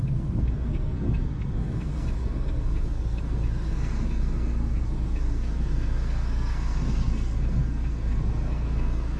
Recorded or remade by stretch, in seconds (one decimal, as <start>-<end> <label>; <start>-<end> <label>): 0.0-9.2 remade